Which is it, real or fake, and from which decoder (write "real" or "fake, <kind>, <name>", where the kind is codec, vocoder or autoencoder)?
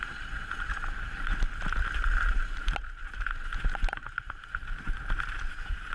real